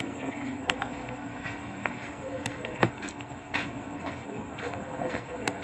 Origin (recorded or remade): remade